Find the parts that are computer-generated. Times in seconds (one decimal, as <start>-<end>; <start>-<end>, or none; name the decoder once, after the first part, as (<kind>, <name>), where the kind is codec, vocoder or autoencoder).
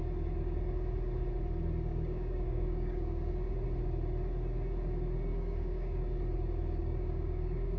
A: 1.9-3.3 (codec, DAC); 5.3-6.0; 6.8-7.8